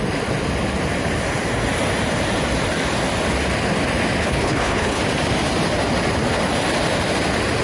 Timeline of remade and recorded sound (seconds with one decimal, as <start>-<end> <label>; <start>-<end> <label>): 0.0-4.2 recorded; 4.2-5.0 remade; 5.0-7.6 recorded